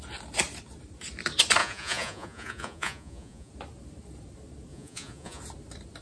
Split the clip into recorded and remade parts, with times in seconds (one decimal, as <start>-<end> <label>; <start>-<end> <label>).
0.0-1.6 recorded; 1.6-3.5 remade; 3.5-4.7 recorded; 4.7-5.4 remade; 5.4-6.0 recorded